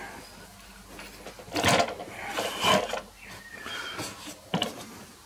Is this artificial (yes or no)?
no